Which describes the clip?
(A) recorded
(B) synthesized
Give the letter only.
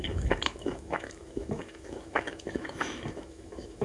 B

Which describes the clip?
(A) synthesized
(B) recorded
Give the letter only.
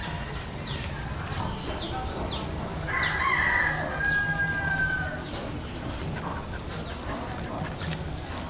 B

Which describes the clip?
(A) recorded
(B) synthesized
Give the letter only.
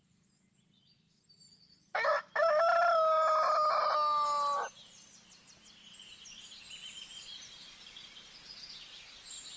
A